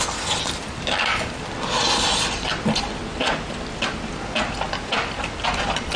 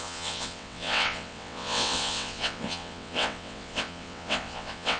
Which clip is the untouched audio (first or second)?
first